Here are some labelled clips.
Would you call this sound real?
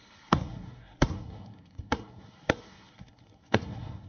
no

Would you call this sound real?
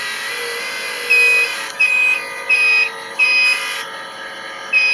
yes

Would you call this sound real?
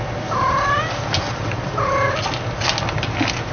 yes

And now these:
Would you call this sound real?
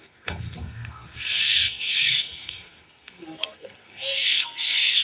no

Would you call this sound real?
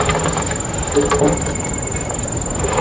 yes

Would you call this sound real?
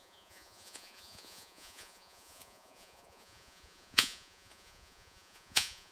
no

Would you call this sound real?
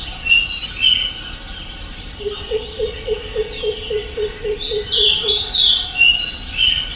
yes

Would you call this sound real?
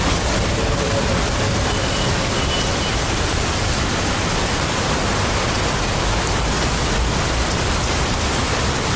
no